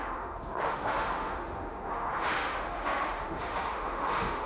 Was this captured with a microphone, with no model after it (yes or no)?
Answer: no